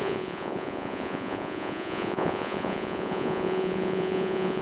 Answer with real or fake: fake